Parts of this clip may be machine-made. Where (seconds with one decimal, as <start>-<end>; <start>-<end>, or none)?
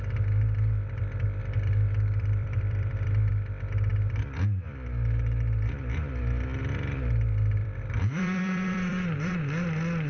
1.4-3.3; 6.6-9.4